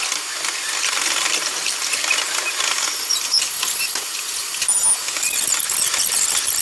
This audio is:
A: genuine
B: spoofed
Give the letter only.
A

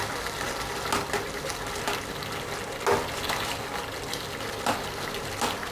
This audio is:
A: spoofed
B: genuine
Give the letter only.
B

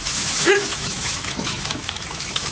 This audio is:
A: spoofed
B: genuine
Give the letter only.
A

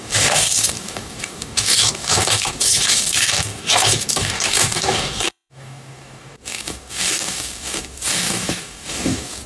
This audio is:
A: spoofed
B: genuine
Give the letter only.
A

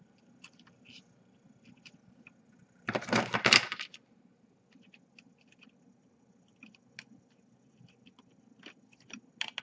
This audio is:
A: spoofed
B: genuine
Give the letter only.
B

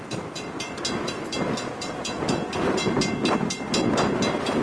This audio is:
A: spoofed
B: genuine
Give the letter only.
B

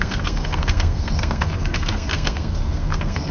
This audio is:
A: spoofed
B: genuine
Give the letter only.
A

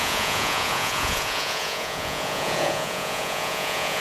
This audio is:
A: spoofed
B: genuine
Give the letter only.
A